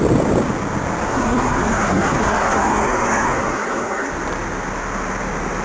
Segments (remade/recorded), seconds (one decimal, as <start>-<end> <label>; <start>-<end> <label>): 0.0-1.1 recorded; 1.1-4.1 remade; 4.1-5.6 recorded